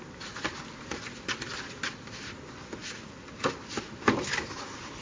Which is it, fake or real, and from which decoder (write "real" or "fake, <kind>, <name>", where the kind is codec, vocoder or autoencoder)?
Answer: real